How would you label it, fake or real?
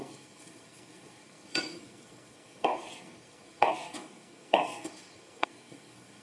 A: fake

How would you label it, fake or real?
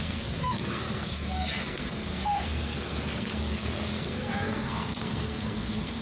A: fake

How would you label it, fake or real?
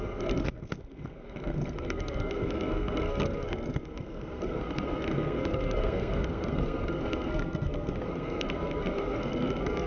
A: fake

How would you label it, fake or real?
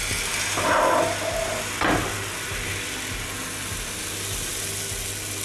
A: real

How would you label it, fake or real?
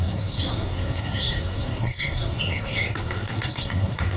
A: fake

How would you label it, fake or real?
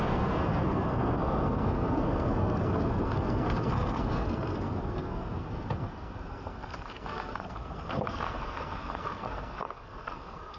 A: fake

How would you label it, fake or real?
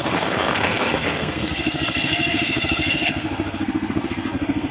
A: fake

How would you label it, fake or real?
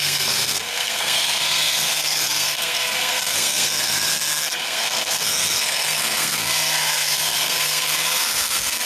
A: fake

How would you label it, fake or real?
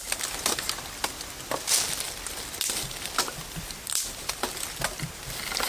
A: real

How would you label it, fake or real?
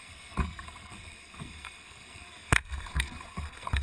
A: fake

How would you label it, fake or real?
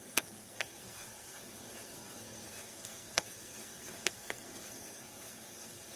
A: fake